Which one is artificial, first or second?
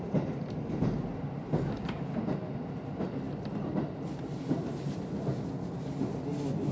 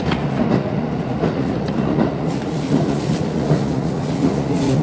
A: second